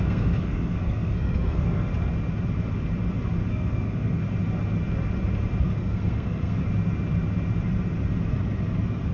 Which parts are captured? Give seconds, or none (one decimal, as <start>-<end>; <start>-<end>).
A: 1.9-3.5; 4.2-5.6; 6.6-9.1